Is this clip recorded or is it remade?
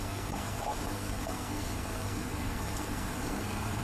remade